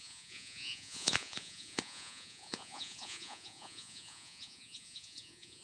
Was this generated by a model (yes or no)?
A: yes